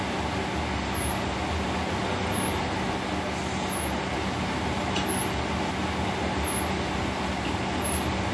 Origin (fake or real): real